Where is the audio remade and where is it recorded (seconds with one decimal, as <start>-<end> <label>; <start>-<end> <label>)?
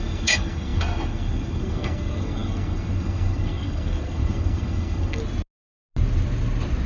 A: 0.0-5.2 remade; 5.2-6.9 recorded